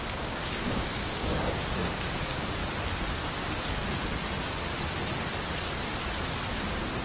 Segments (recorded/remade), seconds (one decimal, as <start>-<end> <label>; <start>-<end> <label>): 0.0-2.6 remade; 2.6-7.0 recorded